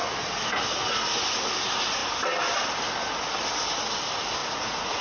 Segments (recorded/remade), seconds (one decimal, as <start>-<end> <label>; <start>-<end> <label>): 0.0-4.4 recorded; 4.4-5.0 remade